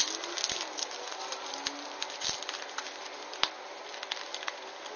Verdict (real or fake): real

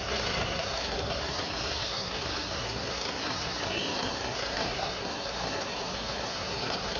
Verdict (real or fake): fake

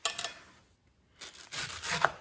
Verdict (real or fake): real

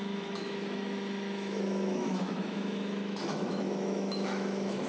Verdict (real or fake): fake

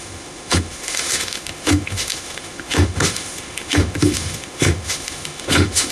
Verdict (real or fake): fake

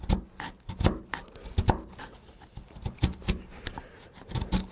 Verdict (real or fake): real